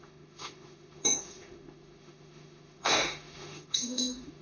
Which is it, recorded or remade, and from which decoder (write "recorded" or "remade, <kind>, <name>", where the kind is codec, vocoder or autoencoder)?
remade, autoencoder, DAC-VAE